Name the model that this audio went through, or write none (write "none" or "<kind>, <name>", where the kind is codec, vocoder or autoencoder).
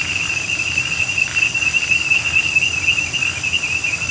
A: none